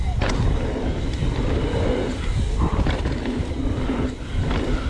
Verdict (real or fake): real